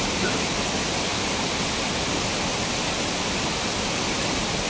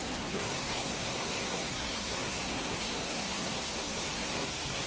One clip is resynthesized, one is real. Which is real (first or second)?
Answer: first